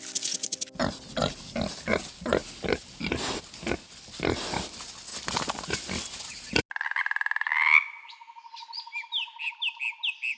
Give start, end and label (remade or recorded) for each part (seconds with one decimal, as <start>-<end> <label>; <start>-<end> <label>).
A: 0.0-10.4 recorded